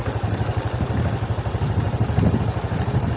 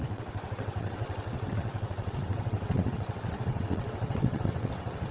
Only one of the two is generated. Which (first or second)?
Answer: second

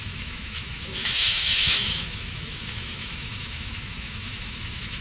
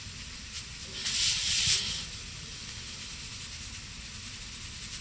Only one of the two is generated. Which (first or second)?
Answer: first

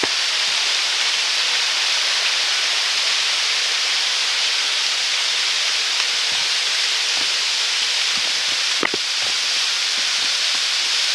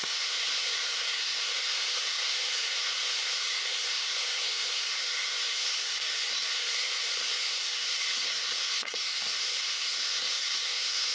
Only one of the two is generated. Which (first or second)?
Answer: second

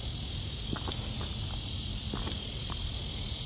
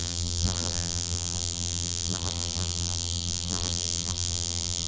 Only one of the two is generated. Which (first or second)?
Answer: second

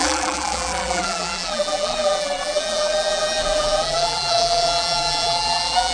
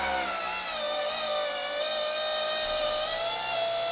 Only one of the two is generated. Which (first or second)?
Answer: first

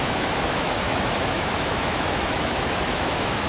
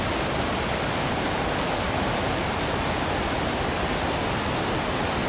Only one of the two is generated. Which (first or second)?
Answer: first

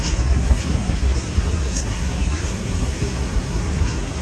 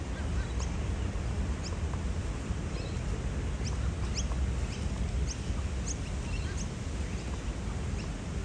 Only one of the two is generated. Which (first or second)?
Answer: first